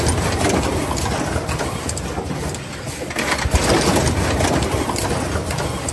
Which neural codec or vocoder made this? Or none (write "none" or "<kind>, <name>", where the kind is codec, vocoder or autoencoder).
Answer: none